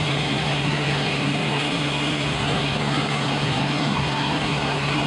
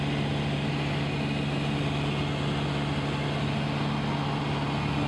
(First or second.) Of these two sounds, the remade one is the first